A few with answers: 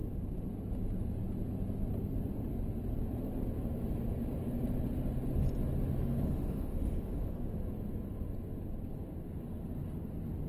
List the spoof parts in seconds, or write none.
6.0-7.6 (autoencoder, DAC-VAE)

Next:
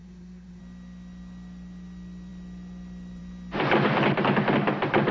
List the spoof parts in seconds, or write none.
0.0-0.6 (codec, SNAC)

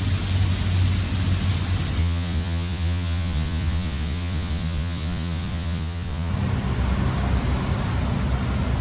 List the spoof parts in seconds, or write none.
2.0-6.3 (vocoder, Vocos)

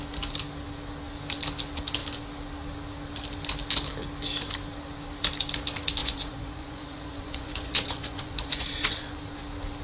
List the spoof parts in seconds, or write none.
6.0-9.2 (vocoder, Vocos)

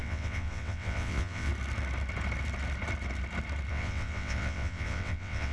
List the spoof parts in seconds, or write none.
0.0-1.5 (vocoder, WaveNeXt); 3.7-5.5